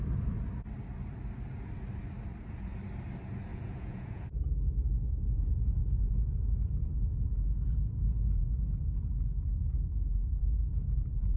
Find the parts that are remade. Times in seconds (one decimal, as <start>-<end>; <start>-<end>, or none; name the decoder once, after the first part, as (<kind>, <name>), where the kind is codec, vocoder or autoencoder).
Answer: 3.5-4.2 (vocoder, Vocos); 5.8-8.8; 10.4-11.4